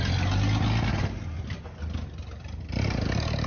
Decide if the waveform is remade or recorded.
recorded